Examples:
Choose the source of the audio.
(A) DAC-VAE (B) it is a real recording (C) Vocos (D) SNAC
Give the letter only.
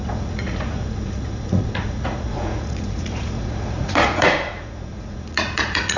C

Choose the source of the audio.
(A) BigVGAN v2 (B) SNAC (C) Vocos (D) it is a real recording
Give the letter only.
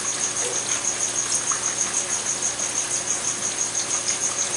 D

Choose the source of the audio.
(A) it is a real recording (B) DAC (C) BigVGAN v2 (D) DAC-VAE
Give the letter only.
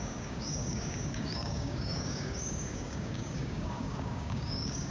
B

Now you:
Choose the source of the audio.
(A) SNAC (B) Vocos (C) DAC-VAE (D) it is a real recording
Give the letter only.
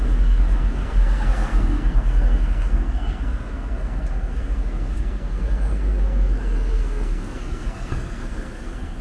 A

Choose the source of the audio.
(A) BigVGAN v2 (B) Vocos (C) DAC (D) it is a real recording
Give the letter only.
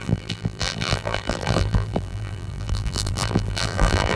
A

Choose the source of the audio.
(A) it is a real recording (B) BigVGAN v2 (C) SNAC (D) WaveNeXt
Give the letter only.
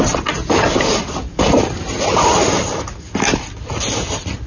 A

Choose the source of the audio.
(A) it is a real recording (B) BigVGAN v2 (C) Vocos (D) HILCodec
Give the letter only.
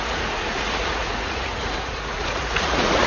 C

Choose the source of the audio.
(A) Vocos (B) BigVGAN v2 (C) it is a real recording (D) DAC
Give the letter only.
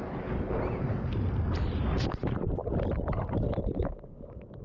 C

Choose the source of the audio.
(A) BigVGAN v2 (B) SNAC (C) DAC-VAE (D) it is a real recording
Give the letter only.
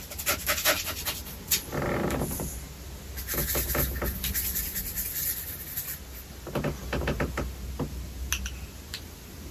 D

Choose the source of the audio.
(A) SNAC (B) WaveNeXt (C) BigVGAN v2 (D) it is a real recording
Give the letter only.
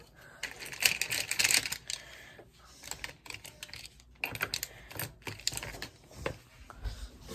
D